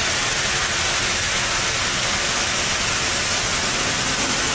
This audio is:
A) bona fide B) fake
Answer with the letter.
A